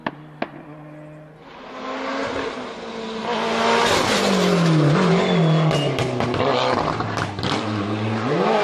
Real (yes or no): yes